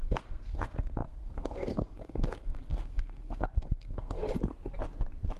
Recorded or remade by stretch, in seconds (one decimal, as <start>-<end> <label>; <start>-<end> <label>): 0.0-4.2 remade; 4.2-5.4 recorded

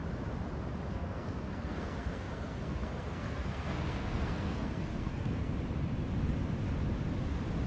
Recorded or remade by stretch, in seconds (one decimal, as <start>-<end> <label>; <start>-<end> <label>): 0.0-0.9 recorded; 0.9-5.5 remade; 5.5-7.7 recorded